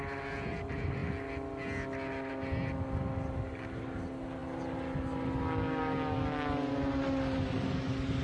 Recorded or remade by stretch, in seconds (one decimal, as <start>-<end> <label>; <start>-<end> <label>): 0.0-8.2 recorded